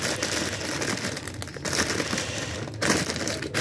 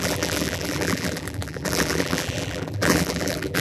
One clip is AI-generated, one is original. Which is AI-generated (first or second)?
second